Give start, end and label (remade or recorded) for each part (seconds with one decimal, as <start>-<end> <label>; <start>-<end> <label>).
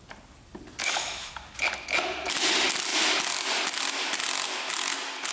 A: 0.0-0.8 recorded; 0.8-1.3 remade; 1.3-5.3 recorded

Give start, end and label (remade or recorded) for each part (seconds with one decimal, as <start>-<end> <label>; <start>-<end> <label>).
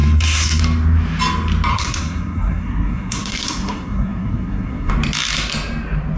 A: 0.0-0.6 remade; 0.6-1.7 recorded; 1.7-4.9 remade; 4.9-6.2 recorded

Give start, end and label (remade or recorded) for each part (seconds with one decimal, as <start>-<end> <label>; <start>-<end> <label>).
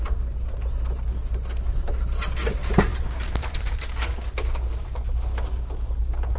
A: 0.0-2.9 recorded; 2.9-4.1 remade; 4.1-6.4 recorded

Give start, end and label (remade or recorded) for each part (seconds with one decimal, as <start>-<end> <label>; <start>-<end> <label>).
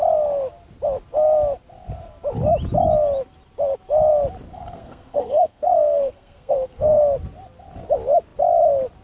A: 0.0-4.5 recorded; 4.5-7.0 remade; 7.0-9.0 recorded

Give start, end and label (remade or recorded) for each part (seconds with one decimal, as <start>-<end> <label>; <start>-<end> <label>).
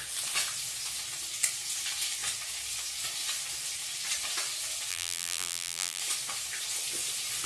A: 0.0-4.9 recorded; 4.9-6.0 remade; 6.0-7.5 recorded